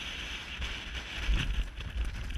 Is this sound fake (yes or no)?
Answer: no